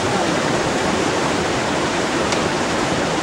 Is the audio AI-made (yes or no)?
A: yes